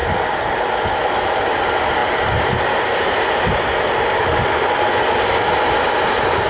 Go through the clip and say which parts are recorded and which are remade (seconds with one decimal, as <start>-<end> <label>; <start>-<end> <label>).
0.0-6.5 recorded